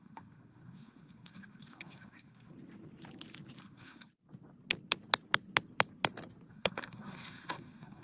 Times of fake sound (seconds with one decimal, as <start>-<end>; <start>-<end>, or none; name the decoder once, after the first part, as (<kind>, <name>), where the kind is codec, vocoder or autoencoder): 0.0-2.5 (codec, SNAC); 3.6-4.1; 6.5-8.0

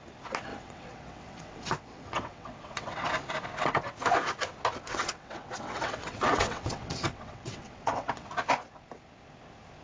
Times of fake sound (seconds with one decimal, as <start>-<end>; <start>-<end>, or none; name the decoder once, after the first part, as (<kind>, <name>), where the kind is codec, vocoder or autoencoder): 0.5-3.1 (vocoder, WaveNeXt); 4.9-8.3

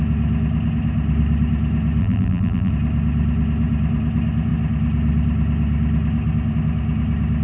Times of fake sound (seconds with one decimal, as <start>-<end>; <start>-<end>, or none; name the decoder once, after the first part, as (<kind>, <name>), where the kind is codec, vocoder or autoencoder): 2.0-2.7 (vocoder, BigVGAN v2)